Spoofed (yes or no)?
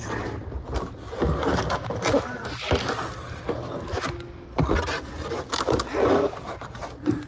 no